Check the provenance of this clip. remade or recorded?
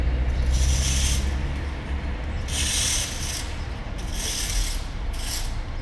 recorded